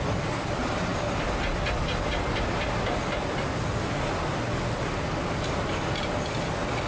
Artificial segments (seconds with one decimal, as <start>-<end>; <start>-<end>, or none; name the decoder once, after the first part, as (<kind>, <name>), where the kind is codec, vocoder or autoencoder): none